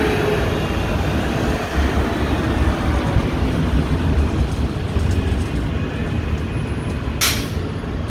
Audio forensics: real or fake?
real